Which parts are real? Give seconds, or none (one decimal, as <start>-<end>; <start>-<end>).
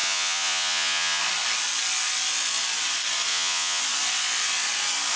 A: 1.2-3.3; 3.8-5.2